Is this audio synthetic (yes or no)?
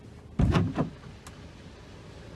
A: no